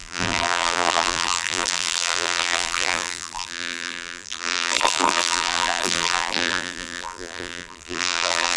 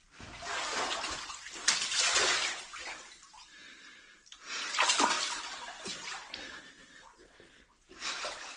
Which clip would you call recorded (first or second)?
second